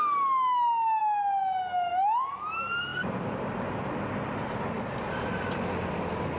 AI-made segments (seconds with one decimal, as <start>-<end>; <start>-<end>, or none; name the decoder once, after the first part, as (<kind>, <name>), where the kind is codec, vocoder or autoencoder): none